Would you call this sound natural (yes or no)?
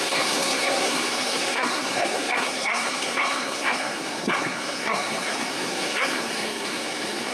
no